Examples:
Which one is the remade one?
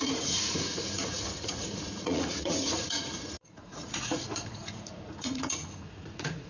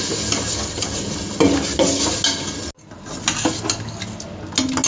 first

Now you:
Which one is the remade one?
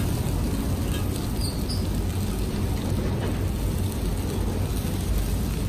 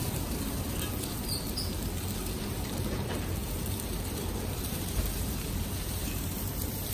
second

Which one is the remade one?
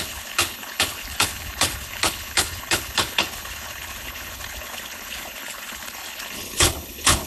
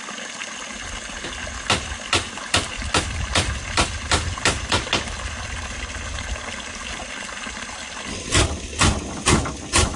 first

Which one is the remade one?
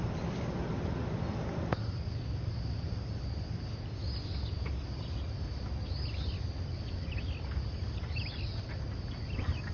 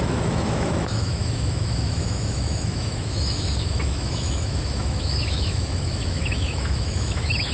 second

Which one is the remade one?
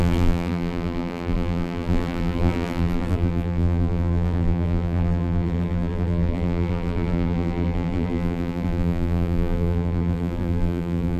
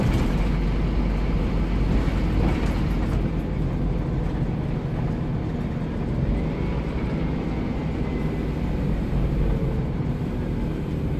first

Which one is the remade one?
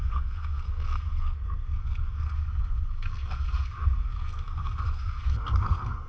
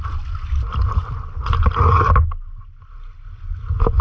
first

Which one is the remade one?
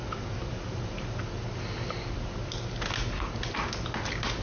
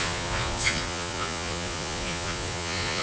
second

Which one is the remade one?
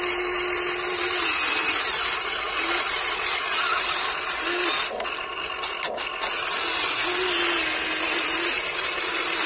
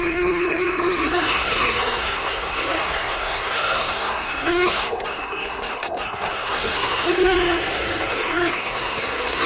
second